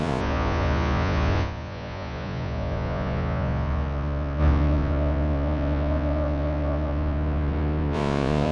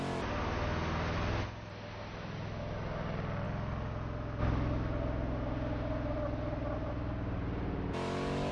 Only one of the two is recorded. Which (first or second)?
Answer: second